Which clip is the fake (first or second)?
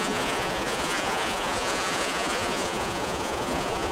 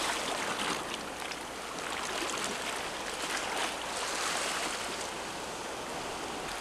first